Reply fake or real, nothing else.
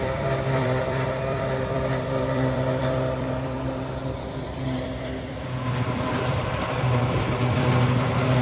fake